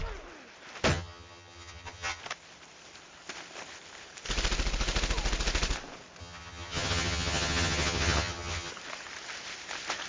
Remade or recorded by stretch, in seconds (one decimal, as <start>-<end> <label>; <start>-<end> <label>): 0.0-0.9 recorded; 0.9-2.2 remade; 2.2-6.2 recorded; 6.2-8.7 remade; 8.7-10.1 recorded